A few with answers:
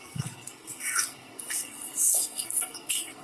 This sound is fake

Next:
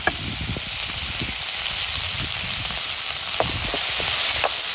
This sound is real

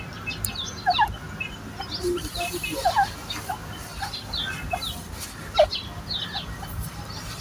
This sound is real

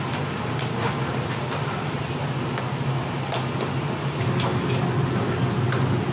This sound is real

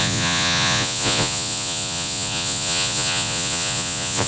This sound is fake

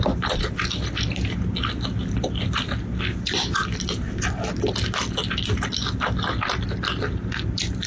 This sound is real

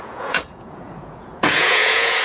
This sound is fake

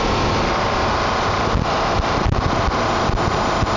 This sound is real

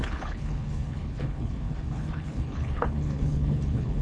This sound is fake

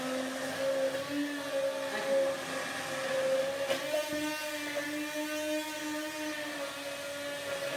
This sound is real